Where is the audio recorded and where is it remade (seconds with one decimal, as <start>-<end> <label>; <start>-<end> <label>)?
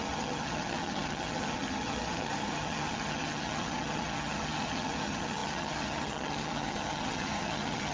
0.0-7.9 remade